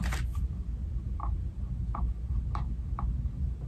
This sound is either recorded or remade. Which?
recorded